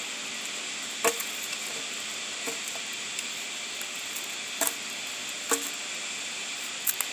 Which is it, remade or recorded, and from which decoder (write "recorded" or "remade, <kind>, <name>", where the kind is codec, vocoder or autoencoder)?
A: recorded